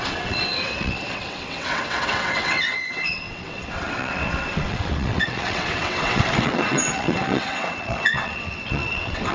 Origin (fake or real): fake